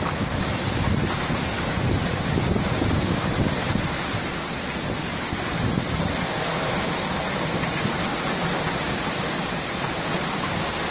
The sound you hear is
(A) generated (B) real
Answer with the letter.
B